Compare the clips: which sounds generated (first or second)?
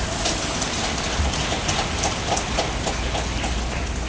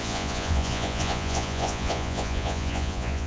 second